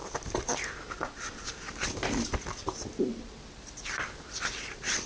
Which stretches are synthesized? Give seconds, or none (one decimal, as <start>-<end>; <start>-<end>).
none